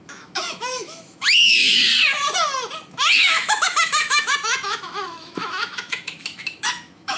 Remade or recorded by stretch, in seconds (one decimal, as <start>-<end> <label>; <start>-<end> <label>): 0.0-1.9 remade; 1.9-2.9 recorded; 2.9-7.2 remade